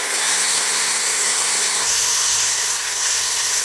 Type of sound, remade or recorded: remade